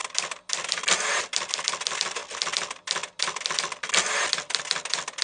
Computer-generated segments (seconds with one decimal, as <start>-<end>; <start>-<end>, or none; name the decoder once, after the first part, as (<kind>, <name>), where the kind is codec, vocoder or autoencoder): none